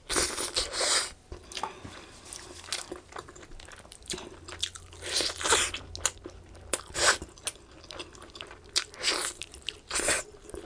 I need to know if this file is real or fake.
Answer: real